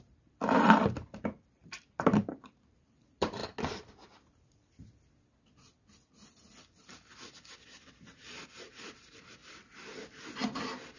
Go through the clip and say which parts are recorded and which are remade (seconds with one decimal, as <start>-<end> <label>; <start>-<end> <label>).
0.0-3.4 remade; 3.4-7.9 recorded; 7.9-9.4 remade; 9.4-11.0 recorded